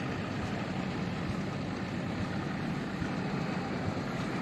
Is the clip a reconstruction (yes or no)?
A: no